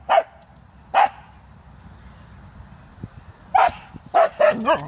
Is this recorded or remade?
recorded